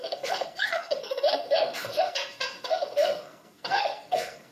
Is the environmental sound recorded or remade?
remade